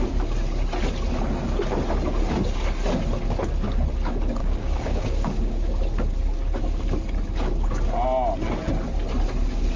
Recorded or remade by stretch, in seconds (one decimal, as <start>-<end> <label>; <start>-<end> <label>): 0.0-4.4 recorded; 4.4-5.7 remade; 5.7-9.8 recorded